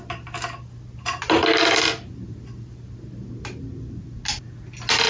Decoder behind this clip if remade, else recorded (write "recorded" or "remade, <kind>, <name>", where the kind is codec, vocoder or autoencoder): recorded